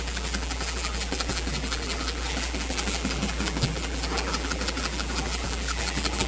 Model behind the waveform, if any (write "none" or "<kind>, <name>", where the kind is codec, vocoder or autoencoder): vocoder, BigVGAN v2